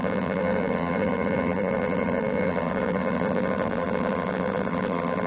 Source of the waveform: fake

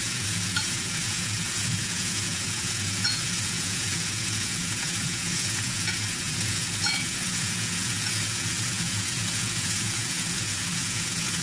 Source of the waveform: fake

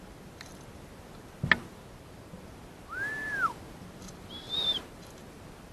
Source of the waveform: real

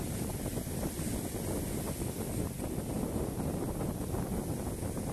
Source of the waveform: real